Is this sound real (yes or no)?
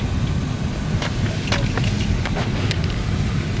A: yes